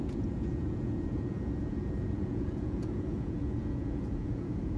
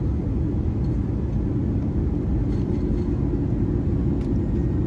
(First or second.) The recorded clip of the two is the second